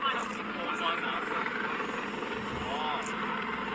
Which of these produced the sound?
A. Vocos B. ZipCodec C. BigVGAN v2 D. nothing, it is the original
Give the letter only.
D